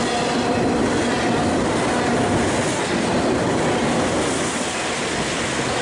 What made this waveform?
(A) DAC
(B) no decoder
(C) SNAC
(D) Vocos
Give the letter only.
B